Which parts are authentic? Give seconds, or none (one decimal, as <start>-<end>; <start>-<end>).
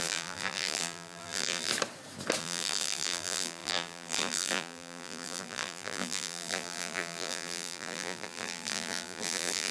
1.7-2.4